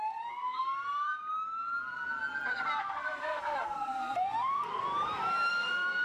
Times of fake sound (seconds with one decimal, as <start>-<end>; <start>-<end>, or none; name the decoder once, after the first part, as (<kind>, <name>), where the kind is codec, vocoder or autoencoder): 0.0-1.2 (codec, SNAC); 2.8-4.7; 5.5-6.0